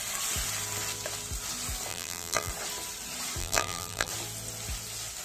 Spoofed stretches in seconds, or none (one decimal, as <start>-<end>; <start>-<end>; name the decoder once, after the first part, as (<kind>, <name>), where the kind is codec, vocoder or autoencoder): 1.9-2.5 (vocoder, BigVGAN v2); 3.4-4.1